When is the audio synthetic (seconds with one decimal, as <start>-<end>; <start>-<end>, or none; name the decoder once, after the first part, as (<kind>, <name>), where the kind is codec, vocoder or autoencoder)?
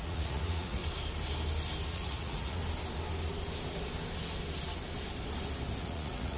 0.0-0.8 (vocoder, Vocos); 1.9-2.6; 5.8-6.4